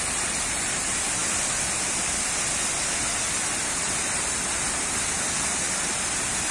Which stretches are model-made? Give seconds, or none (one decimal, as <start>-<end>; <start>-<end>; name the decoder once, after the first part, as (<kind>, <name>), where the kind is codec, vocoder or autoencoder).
none